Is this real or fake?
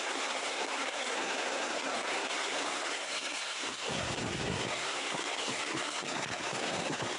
fake